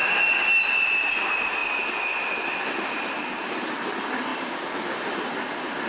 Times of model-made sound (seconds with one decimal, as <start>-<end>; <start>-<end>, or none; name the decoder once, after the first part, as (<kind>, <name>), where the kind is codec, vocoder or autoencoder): none